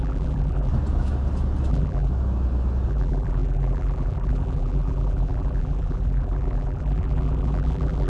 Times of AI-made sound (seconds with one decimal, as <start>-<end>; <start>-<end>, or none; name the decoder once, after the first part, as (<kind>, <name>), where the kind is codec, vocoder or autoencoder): 0.0-0.7 (vocoder, BigVGAN v2); 1.7-2.1; 2.9-8.1